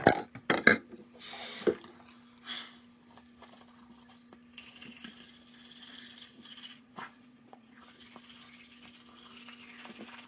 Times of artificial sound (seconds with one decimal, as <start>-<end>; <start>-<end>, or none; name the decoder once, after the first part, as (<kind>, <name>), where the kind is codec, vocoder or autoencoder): 6.3-7.8 (vocoder, Vocos)